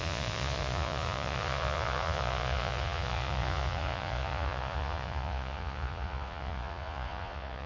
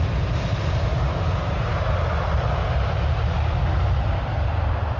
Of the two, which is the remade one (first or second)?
first